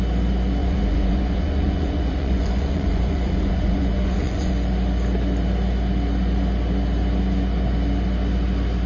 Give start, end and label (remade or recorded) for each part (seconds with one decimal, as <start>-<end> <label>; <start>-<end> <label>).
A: 0.0-0.6 recorded; 0.6-4.5 remade; 4.5-8.9 recorded